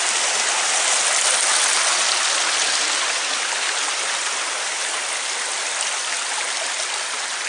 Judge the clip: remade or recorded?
recorded